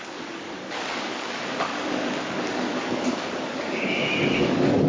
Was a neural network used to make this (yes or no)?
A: yes